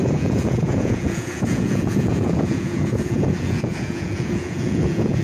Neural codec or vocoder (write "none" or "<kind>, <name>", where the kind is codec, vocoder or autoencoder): vocoder, Vocos